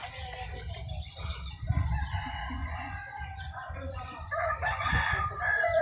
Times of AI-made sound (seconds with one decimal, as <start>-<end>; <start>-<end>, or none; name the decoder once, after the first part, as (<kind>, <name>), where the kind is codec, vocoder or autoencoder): 2.1-5.8 (vocoder, Vocos)